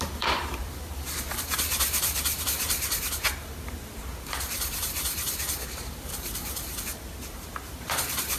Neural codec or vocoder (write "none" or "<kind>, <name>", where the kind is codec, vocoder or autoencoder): vocoder, BigVGAN v2